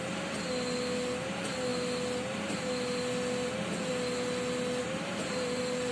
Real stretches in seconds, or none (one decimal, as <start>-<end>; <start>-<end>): 0.0-4.8

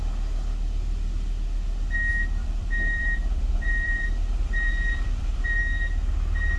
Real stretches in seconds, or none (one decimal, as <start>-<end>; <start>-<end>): 0.0-2.1; 5.6-6.6